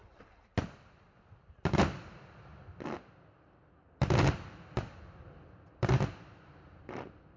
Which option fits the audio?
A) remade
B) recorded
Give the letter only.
B